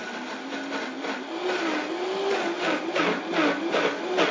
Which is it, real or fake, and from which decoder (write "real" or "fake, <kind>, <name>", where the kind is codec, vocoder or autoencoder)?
real